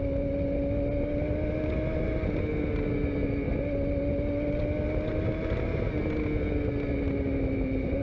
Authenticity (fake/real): real